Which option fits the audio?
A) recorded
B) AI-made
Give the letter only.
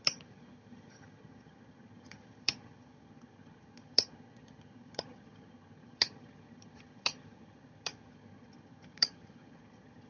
B